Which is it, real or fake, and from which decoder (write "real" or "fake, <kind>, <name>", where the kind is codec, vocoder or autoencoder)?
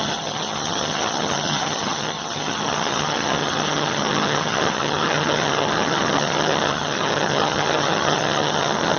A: fake, vocoder, HiFi-GAN